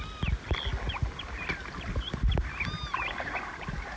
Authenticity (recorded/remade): recorded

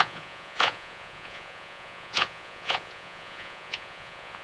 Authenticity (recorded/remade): remade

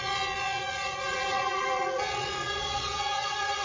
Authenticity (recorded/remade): remade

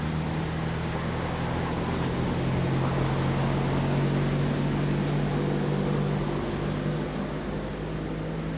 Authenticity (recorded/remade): recorded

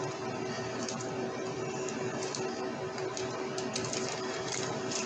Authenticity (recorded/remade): recorded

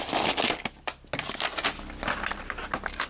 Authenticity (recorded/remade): recorded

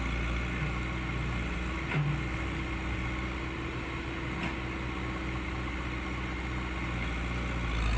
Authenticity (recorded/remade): recorded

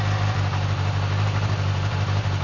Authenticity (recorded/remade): recorded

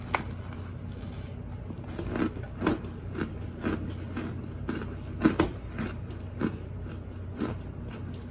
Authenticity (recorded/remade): recorded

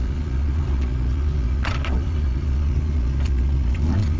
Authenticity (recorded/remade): remade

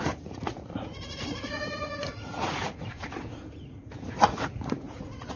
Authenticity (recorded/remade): remade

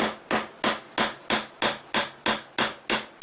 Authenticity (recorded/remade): recorded